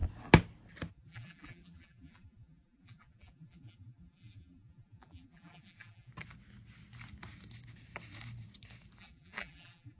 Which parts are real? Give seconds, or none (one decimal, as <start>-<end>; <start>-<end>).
0.0-0.9; 6.1-9.0

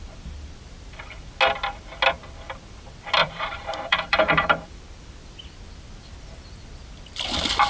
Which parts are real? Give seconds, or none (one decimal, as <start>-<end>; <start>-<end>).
0.0-3.2; 4.7-7.7

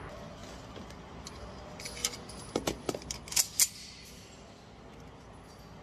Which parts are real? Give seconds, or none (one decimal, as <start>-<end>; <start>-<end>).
0.0-5.8

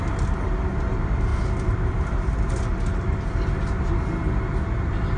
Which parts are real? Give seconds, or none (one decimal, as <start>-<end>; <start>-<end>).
0.0-1.3; 3.9-5.2

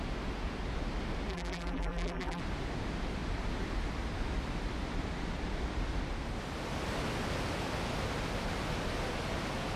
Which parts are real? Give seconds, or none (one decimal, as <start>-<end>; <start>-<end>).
0.0-1.3; 2.4-9.8